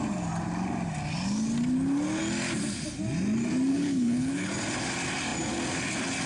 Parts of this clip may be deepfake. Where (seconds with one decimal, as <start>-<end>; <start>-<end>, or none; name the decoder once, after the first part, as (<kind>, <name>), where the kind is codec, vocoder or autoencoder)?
3.7-4.5 (codec, HILCodec)